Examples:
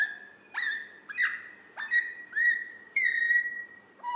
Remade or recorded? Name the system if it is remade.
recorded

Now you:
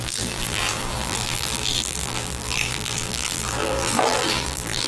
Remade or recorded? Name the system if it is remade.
remade, vocoder, BigVGAN v2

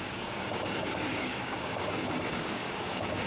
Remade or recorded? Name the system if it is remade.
remade, codec, DAC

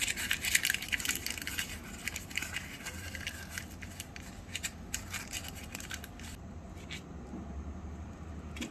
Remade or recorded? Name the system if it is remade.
recorded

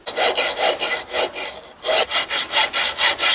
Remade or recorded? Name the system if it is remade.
recorded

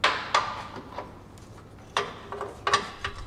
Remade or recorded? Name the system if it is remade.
recorded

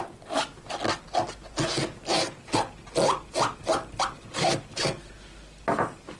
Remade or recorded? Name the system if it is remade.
recorded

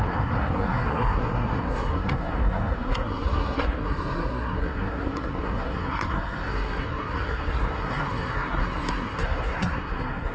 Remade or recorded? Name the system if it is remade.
remade, codec, SNAC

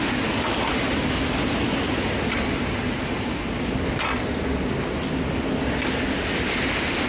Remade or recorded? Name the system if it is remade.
recorded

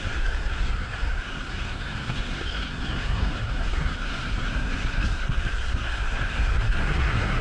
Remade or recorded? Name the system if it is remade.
remade, codec, SNAC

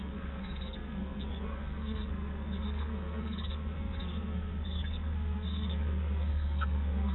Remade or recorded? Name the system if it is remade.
remade, codec, SNAC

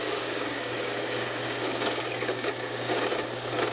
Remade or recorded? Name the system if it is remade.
remade, codec, DAC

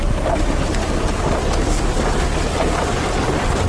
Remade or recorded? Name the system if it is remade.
recorded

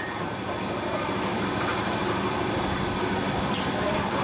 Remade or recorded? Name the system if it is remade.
recorded